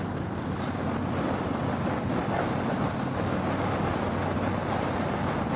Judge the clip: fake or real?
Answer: real